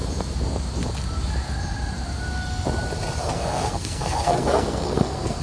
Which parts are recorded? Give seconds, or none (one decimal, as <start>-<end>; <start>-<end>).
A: 0.0-3.2